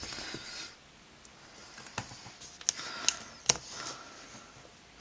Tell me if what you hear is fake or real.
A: real